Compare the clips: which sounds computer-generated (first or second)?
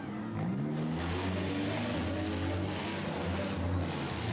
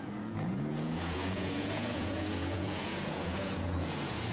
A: second